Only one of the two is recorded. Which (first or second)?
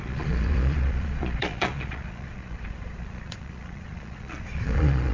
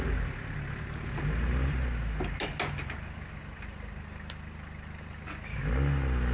second